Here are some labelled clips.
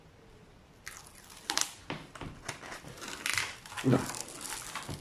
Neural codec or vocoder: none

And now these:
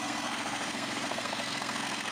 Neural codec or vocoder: codec, SNAC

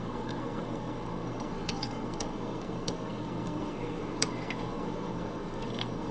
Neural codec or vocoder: codec, SNAC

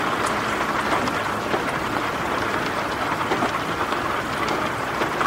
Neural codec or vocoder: none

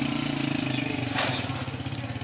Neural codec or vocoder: none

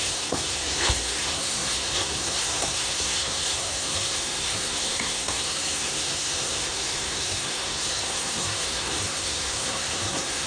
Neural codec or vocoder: codec, SNAC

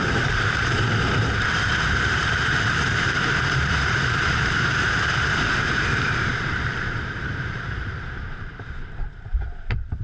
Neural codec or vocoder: vocoder, BigVGAN v2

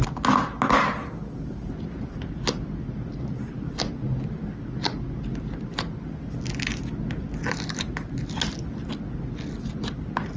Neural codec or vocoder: none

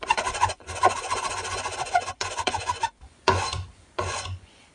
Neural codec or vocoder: vocoder, Vocos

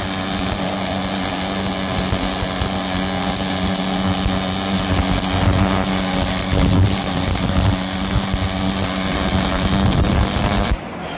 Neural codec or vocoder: none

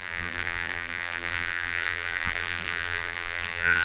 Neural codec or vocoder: vocoder, BigVGAN v2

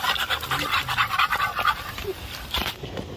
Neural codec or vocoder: none